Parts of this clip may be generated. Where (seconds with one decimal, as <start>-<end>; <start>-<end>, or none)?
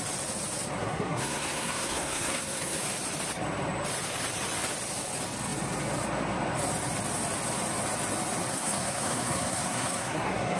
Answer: 0.8-2.8; 8.5-10.6